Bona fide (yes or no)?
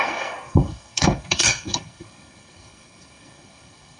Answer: no